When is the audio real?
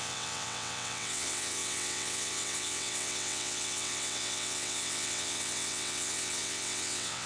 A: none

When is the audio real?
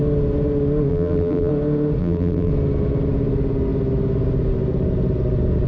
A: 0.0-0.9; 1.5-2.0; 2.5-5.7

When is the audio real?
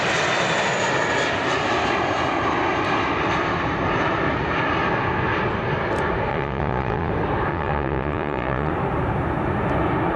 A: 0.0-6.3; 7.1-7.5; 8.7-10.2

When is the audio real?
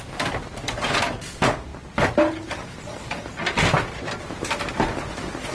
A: 0.0-5.5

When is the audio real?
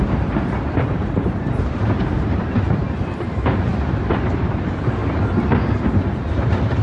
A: 2.8-3.3; 5.0-6.3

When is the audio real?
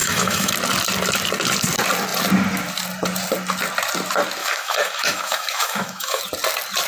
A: 0.5-4.4; 6.2-6.9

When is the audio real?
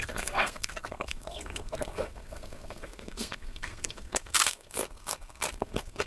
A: none